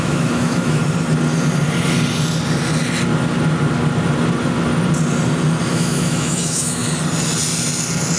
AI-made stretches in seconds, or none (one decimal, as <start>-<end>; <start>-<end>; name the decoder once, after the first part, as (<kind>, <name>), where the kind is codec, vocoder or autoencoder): 0.0-0.8 (autoencoder, DAC-VAE); 5.7-6.8